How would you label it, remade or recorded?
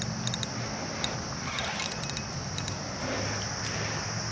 recorded